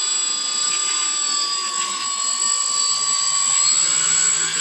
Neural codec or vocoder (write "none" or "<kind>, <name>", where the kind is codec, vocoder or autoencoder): none